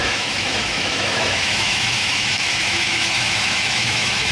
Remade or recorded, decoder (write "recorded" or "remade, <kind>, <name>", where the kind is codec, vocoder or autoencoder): remade, autoencoder, DAC-VAE